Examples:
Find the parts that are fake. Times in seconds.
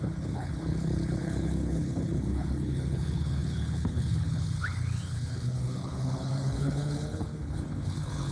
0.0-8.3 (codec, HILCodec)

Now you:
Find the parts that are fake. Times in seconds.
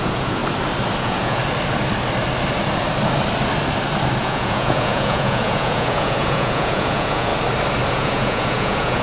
0.0-0.4 (vocoder, Vocos); 1.0-1.4; 4.2-7.3; 7.9-9.0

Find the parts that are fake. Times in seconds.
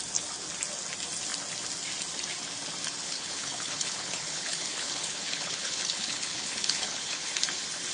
3.0-7.3 (codec, HILCodec)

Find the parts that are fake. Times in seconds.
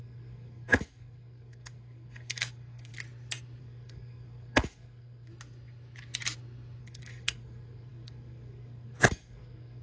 0.0-2.9 (codec, SNAC); 3.6-5.3; 6.8-9.8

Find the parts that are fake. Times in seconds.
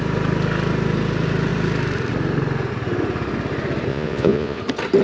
3.9-4.6 (vocoder, Vocos)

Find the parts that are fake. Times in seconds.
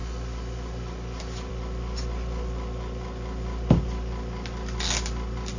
none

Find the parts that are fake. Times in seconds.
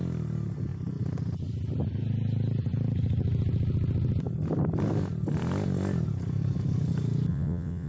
7.3-7.9 (vocoder, WaveNeXt)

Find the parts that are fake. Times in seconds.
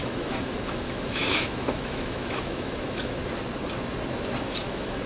0.0-3.2 (autoencoder, DAC-VAE); 4.4-5.1